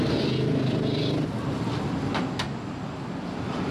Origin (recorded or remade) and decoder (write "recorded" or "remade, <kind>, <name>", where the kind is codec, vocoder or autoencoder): recorded